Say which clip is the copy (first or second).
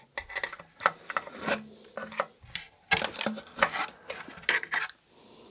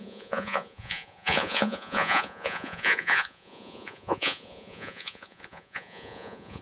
second